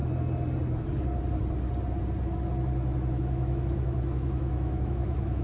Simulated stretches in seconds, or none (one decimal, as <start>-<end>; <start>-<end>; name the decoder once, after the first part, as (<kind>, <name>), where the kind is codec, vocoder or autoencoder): 3.1-5.4 (autoencoder, DAC-VAE)